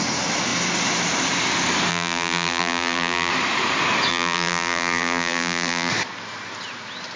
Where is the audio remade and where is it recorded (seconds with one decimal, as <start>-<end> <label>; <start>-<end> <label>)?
0.0-1.9 recorded; 1.9-3.3 remade; 3.3-4.1 recorded; 4.1-5.9 remade; 5.9-7.2 recorded